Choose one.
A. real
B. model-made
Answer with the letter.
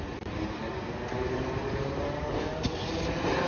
A